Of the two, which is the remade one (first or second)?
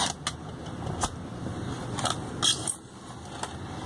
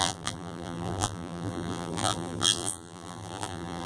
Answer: second